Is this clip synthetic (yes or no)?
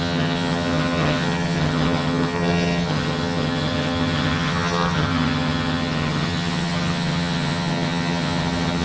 yes